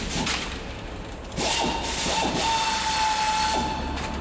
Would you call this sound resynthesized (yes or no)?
no